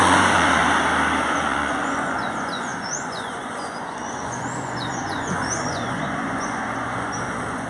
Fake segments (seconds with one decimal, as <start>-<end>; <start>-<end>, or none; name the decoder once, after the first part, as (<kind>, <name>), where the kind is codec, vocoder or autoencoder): 0.0-0.6 (vocoder, Vocos); 1.2-7.7